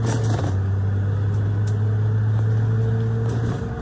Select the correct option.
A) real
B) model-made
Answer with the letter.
A